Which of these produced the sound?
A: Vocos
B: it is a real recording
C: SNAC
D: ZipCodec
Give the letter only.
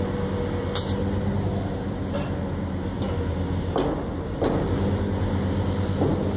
B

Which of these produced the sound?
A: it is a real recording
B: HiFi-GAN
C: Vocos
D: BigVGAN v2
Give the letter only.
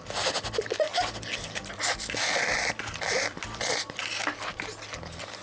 A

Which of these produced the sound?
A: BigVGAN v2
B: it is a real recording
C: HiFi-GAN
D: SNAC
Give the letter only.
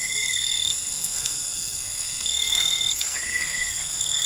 D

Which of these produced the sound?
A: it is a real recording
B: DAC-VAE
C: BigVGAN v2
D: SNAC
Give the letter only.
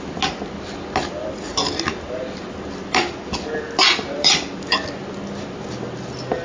A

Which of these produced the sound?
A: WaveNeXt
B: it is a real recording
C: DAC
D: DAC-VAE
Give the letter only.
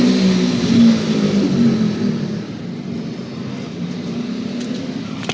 B